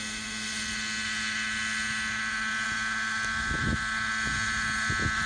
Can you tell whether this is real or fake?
real